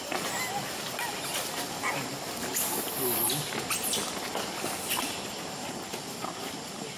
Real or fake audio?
real